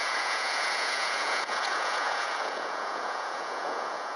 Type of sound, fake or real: fake